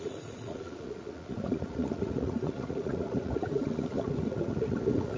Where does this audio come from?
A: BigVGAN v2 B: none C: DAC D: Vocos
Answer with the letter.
D